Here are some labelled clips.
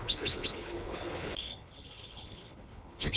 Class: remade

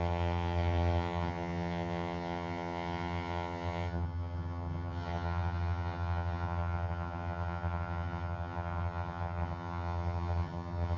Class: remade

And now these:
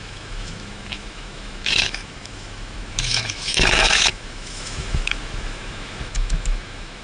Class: remade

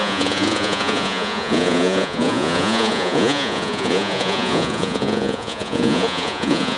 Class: remade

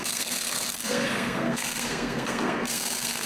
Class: remade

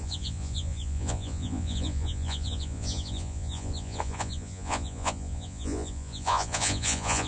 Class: remade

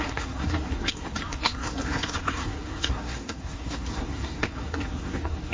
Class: remade